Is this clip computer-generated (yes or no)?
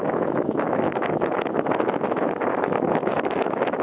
yes